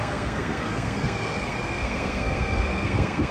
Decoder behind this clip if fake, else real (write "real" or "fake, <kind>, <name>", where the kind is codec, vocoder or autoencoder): fake, codec, SNAC